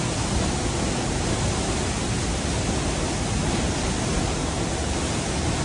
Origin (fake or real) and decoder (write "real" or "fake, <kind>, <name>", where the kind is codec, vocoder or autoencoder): real